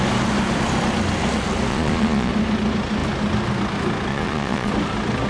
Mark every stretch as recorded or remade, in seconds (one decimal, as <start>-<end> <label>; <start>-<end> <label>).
0.0-1.7 recorded; 1.7-2.3 remade; 2.3-4.1 recorded; 4.1-4.7 remade; 4.7-5.3 recorded